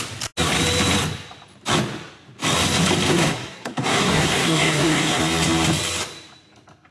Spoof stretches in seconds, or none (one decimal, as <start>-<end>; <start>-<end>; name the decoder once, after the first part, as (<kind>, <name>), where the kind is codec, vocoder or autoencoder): 3.1-5.2 (codec, SNAC)